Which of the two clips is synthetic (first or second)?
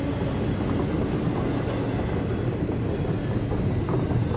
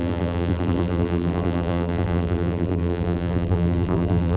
second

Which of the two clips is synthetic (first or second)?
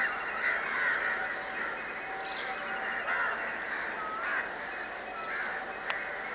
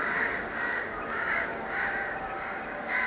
second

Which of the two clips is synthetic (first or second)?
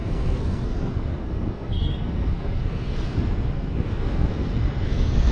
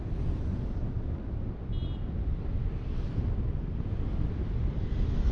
first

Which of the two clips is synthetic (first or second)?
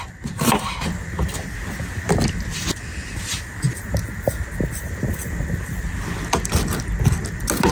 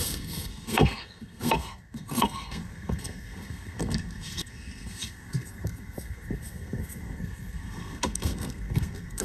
second